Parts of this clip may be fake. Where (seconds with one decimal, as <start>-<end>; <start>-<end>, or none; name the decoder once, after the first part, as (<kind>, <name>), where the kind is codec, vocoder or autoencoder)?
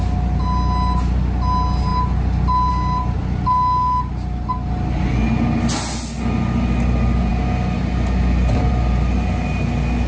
none